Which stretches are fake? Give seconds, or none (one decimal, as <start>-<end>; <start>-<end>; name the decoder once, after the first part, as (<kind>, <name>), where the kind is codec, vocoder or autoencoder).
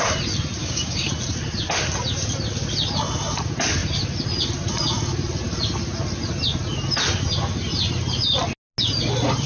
0.6-1.1 (codec, DAC)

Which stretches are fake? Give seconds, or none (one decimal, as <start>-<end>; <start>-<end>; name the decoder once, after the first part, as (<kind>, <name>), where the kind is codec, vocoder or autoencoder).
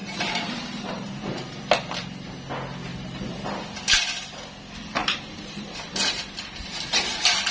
0.0-1.6 (vocoder, BigVGAN v2); 2.9-3.6; 5.0-7.0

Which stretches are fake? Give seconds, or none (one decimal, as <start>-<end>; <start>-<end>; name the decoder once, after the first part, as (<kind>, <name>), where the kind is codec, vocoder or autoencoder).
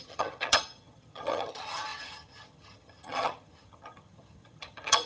0.0-5.1 (vocoder, HiFi-GAN)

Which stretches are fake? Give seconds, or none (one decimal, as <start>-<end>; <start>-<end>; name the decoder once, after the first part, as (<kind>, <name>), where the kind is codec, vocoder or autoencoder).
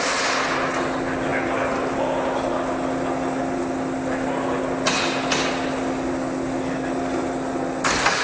none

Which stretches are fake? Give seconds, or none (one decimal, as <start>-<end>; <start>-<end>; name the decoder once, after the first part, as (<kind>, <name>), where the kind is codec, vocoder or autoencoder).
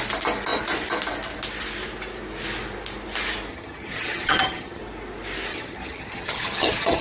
3.5-4.8 (vocoder, HiFi-GAN); 5.5-7.0